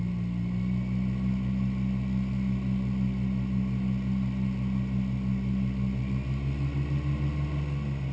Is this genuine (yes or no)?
yes